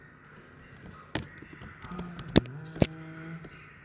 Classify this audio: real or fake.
real